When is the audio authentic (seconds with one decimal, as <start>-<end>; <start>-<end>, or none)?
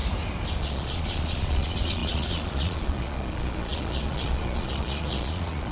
0.0-0.6